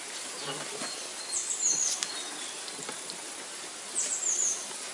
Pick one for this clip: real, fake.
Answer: fake